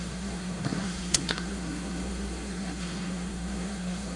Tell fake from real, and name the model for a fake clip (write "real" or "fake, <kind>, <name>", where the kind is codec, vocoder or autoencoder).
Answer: fake, codec, SNAC